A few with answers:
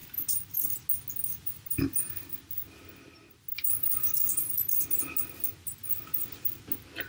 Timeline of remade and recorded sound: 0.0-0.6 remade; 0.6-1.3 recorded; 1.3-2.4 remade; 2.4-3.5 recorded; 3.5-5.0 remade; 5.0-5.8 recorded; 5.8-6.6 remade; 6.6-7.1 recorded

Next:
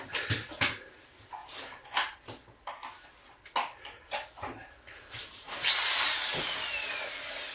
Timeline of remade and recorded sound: 0.0-1.4 recorded; 1.4-3.1 remade; 3.1-4.6 recorded; 4.6-6.9 remade; 6.9-7.5 recorded

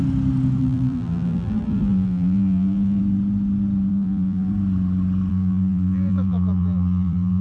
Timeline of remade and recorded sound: 0.0-0.6 recorded; 0.6-3.0 remade; 3.0-3.9 recorded; 3.9-4.5 remade; 4.5-5.3 recorded; 5.3-7.4 remade

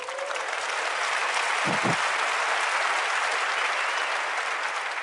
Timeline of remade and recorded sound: 0.0-5.0 recorded

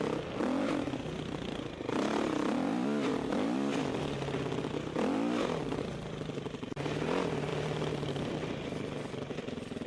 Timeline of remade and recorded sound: 0.0-7.5 recorded; 7.5-8.1 remade; 8.1-9.9 recorded

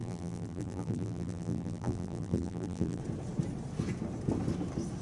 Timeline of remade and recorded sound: 0.0-3.0 remade; 3.0-5.0 recorded

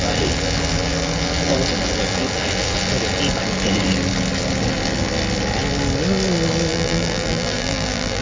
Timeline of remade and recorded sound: 0.0-6.7 recorded; 6.7-8.2 remade

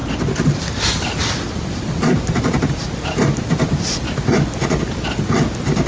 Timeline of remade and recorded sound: 0.0-1.2 recorded; 1.2-4.7 remade; 4.7-5.9 recorded